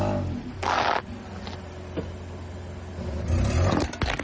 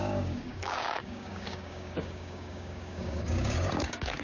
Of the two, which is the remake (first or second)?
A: second